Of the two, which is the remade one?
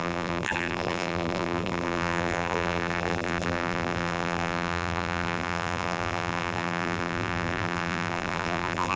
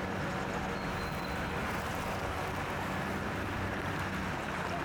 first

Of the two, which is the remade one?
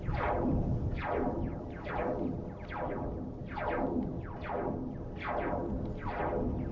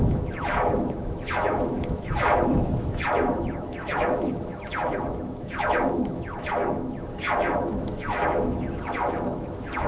second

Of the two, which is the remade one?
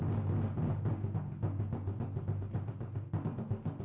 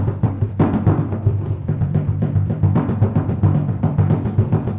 second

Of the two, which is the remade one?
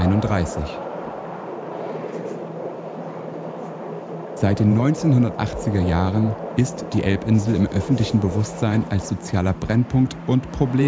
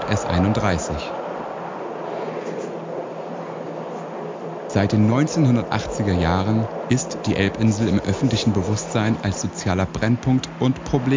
first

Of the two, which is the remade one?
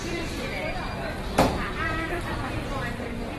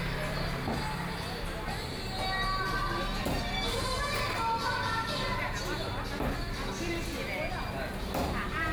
first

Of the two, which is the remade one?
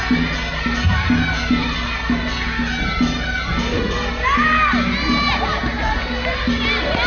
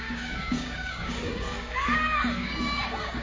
second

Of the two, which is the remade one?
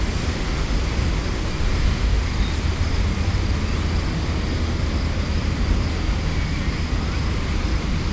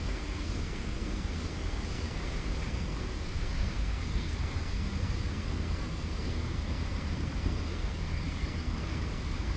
second